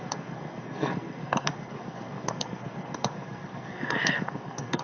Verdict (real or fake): fake